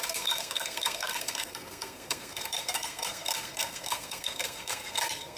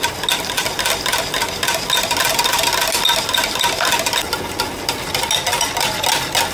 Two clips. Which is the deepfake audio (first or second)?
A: first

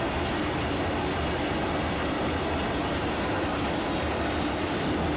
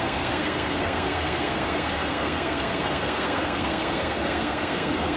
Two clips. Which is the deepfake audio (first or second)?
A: second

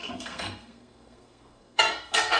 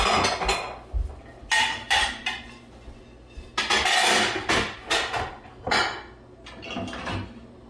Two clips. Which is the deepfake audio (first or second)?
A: first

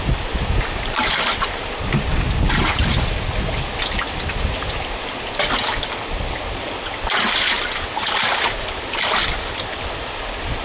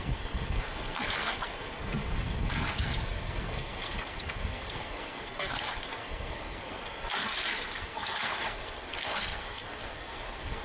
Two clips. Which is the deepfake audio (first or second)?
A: second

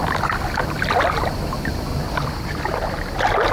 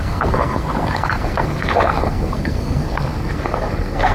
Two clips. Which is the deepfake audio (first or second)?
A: second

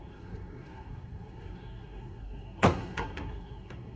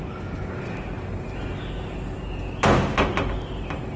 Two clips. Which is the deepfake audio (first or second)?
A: first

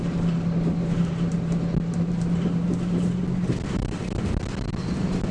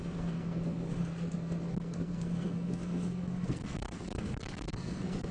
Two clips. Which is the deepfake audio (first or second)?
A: second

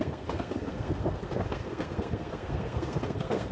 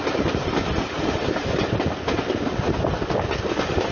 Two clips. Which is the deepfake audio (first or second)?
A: first